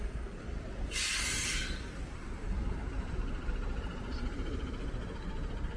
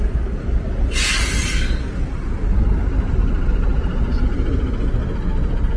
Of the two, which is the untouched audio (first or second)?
second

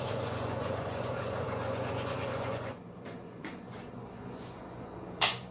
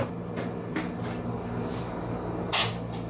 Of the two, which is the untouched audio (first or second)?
second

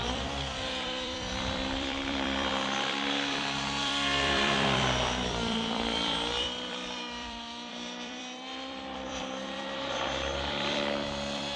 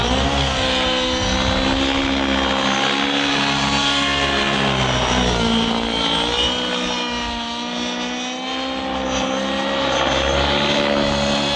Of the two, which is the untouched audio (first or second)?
second